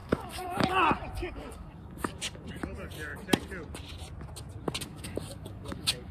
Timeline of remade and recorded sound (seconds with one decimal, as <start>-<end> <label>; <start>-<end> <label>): 0.0-0.7 remade; 0.7-1.2 recorded; 1.2-2.5 remade; 2.5-4.9 recorded; 4.9-6.1 remade